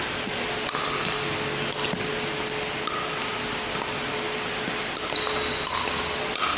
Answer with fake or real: real